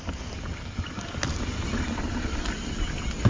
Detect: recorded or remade recorded